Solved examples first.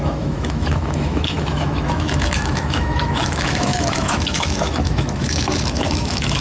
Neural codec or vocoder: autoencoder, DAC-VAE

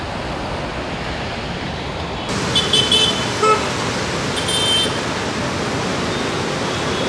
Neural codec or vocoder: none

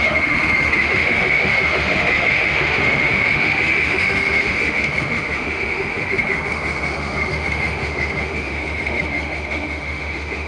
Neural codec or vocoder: autoencoder, DAC-VAE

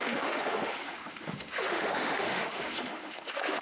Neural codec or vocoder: autoencoder, DAC-VAE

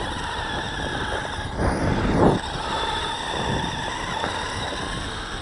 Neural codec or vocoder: none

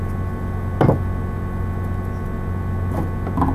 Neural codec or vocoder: none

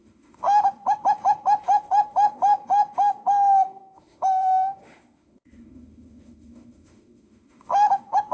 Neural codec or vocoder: autoencoder, DAC-VAE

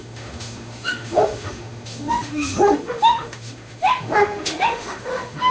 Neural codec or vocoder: autoencoder, DAC-VAE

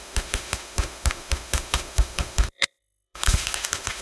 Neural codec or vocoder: autoencoder, DAC-VAE